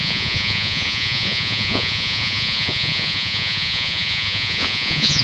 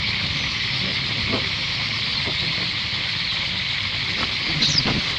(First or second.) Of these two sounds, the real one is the second